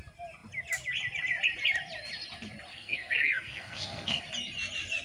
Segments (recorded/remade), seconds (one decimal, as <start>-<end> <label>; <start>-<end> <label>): 0.0-2.7 recorded; 2.7-4.2 remade; 4.2-5.0 recorded